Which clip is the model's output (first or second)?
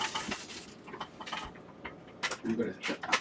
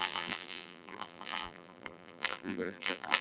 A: second